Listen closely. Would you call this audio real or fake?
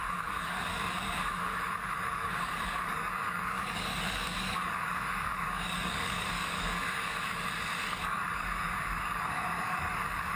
fake